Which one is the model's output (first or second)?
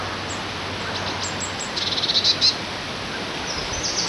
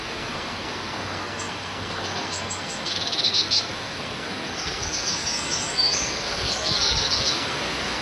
second